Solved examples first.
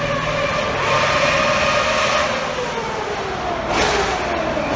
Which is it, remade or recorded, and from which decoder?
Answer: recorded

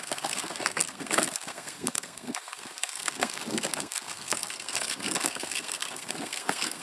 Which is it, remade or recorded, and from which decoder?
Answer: remade, codec, SNAC